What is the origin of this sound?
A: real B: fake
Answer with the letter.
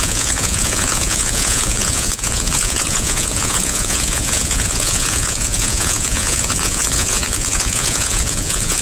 B